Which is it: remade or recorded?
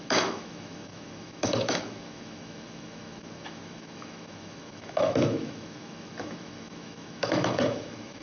remade